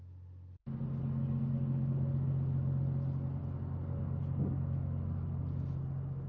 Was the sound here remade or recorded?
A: recorded